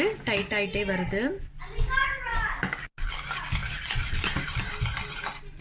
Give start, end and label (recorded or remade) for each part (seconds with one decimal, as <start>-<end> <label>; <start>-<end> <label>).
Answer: 0.0-3.6 recorded; 3.6-4.1 remade; 4.1-5.6 recorded